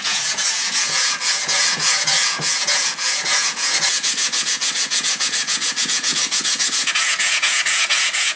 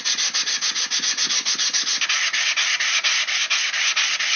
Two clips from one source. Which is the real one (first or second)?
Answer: second